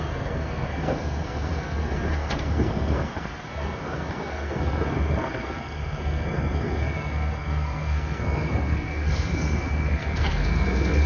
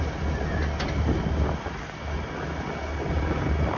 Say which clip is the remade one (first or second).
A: first